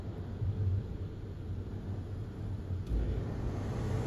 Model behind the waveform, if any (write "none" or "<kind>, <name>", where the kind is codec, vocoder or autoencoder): none